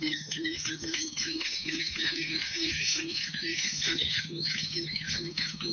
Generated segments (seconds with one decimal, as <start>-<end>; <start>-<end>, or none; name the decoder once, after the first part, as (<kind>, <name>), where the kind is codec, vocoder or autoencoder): 0.0-5.7 (autoencoder, DAC-VAE)